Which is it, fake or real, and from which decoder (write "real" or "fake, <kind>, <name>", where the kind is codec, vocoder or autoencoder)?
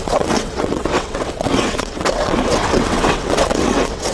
fake, vocoder, WaveNeXt